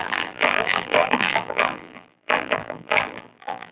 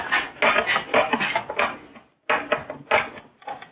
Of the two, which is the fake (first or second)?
first